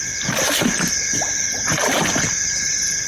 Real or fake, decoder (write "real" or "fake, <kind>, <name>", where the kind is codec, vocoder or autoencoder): real